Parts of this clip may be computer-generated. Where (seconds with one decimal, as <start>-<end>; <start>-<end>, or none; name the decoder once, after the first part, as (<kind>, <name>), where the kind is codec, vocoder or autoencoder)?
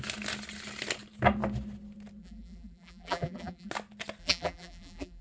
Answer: 2.2-3.7 (vocoder, BigVGAN v2); 4.2-5.2